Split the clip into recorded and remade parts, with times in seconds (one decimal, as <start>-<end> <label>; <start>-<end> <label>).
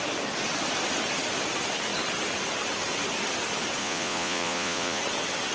0.0-3.8 recorded; 3.8-5.0 remade; 5.0-5.5 recorded